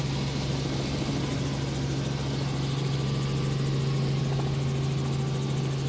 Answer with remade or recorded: recorded